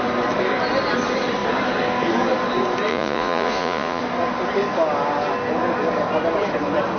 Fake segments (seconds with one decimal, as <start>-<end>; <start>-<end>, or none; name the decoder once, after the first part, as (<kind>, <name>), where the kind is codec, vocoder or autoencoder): 2.9-4.0 (vocoder, Vocos)